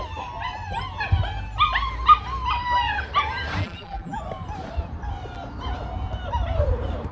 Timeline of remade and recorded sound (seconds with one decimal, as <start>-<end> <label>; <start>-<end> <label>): 0.0-3.6 recorded; 3.6-4.2 remade; 4.2-7.1 recorded